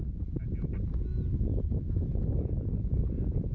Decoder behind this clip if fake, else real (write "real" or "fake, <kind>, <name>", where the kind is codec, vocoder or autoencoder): real